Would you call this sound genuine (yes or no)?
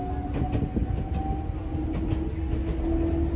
yes